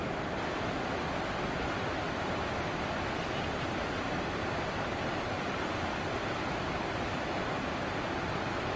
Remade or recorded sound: recorded